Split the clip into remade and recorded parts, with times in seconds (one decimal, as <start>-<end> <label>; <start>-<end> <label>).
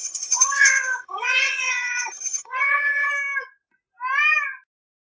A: 0.0-3.1 remade; 3.1-5.1 recorded